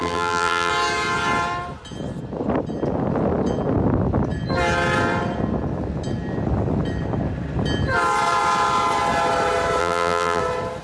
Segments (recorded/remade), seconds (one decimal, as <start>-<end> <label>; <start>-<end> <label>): 0.0-0.7 remade; 0.7-9.8 recorded; 9.8-10.4 remade; 10.4-10.8 recorded